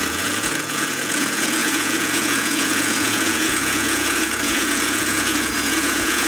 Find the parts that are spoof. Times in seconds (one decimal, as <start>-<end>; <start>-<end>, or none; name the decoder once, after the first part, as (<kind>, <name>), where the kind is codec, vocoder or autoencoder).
0.0-6.3 (vocoder, Vocos)